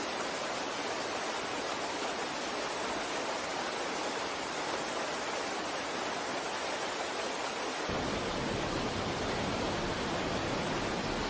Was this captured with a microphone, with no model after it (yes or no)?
yes